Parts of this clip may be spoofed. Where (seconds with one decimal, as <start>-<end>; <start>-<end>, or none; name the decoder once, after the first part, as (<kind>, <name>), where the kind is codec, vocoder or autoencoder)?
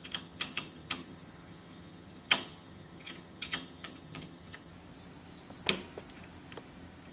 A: 0.0-4.7 (vocoder, HiFi-GAN)